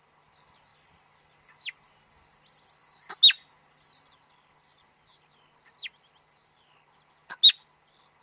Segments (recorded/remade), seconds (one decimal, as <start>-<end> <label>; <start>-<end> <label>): 0.0-8.2 recorded